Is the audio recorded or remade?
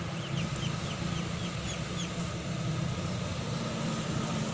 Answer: recorded